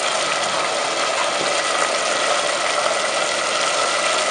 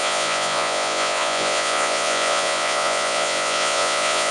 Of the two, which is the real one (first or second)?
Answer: first